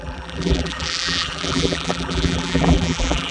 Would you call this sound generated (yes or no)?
yes